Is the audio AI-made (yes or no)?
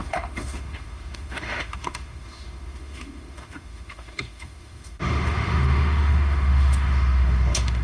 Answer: yes